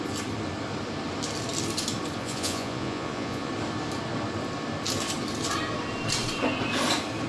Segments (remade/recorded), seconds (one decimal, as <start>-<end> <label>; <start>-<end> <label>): 0.0-2.2 recorded; 2.2-3.5 remade; 3.5-7.3 recorded